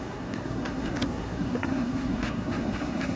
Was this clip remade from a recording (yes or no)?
yes